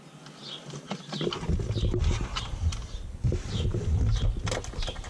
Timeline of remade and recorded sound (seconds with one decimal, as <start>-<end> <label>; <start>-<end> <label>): 0.0-5.1 recorded